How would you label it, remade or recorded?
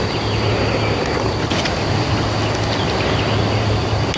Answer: recorded